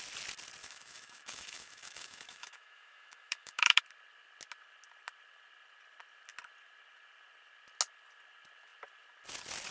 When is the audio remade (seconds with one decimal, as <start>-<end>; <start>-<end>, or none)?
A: 0.6-3.8